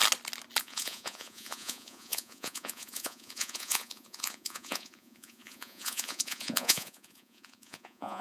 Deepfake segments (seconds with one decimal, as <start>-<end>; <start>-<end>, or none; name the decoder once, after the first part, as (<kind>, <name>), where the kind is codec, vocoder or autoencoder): 0.6-8.2 (vocoder, Vocos)